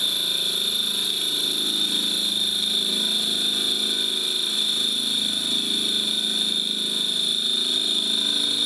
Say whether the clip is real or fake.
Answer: real